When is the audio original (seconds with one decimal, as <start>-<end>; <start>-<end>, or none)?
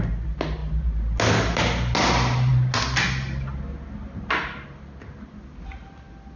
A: 0.0-6.4